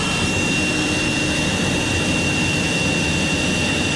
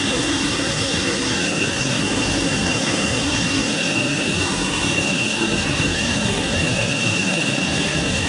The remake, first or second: second